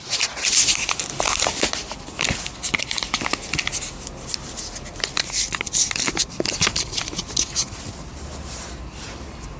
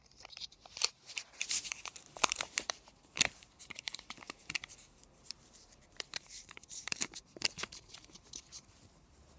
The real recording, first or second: first